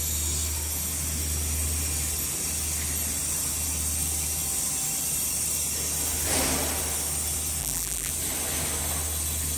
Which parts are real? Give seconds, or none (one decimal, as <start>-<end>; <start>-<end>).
0.0-7.6; 8.1-9.6